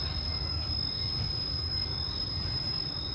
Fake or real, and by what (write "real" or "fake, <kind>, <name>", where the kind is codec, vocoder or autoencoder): real